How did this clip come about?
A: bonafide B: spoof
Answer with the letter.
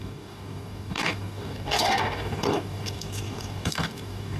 B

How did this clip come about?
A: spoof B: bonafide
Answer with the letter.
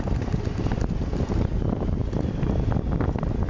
B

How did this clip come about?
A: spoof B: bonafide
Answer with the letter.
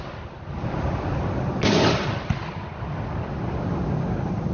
B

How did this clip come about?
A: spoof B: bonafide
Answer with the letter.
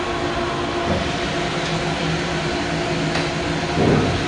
B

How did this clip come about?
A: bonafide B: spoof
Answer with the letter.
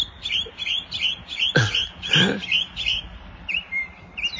A